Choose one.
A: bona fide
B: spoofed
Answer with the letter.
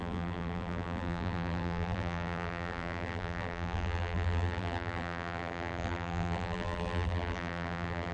B